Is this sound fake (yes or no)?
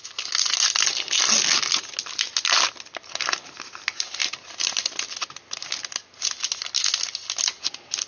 no